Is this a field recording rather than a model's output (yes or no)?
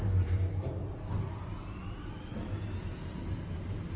yes